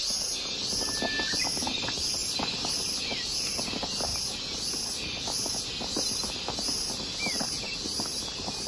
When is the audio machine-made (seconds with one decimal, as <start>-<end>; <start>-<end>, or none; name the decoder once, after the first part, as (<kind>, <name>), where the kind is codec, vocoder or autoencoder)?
none